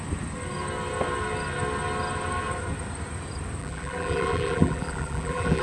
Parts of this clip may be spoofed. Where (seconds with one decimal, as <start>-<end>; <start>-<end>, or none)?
3.6-5.6